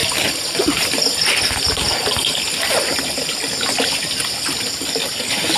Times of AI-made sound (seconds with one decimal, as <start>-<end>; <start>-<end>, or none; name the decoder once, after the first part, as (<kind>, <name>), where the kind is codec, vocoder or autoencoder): none